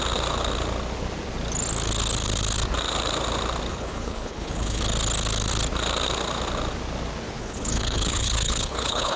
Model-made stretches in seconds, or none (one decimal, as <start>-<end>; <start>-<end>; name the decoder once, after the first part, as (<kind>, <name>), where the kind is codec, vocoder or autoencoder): 3.7-4.8 (codec, HILCodec); 7.4-9.2